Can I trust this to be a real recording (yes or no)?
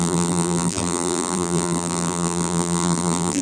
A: no